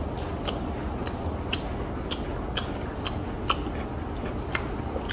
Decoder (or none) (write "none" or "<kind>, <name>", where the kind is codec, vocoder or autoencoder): none